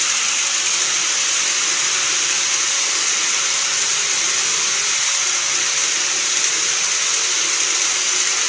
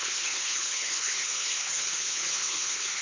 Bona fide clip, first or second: first